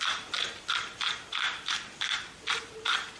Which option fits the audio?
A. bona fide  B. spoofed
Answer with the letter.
A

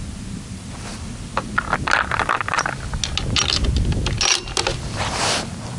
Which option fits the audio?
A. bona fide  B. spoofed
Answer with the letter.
A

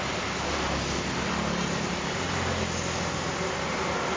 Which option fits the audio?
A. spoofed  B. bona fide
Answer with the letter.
B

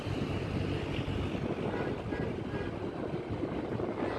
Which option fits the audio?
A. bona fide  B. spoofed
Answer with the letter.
A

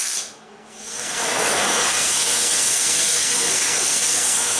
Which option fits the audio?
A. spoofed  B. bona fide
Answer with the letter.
A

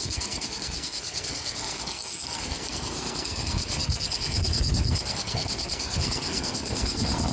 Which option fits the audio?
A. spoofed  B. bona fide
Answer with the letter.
A